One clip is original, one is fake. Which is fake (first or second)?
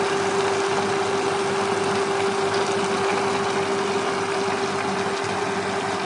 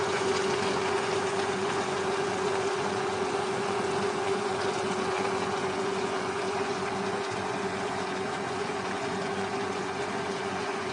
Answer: second